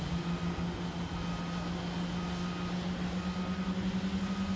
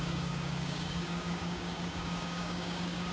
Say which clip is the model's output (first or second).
second